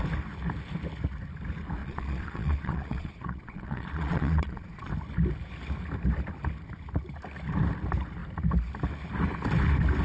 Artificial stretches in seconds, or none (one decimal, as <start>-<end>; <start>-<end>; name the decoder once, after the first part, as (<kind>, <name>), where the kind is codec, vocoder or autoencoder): 1.8-4.9 (vocoder, Vocos)